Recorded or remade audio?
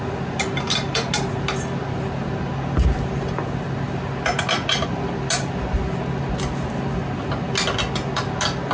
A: recorded